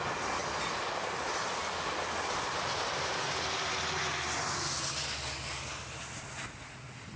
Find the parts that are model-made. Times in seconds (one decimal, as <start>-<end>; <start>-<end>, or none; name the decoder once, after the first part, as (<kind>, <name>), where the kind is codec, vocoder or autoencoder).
none